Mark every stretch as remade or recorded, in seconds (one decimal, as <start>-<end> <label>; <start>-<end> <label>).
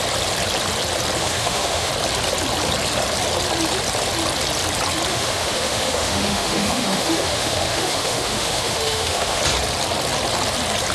0.0-1.2 recorded; 1.2-1.9 remade; 1.9-5.1 recorded; 5.1-9.4 remade; 9.4-10.9 recorded